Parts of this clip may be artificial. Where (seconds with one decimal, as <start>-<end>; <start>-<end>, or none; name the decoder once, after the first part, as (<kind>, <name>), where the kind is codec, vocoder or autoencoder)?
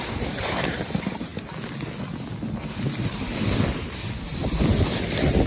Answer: none